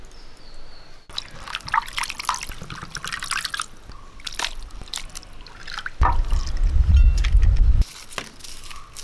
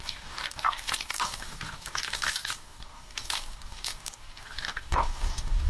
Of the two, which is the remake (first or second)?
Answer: second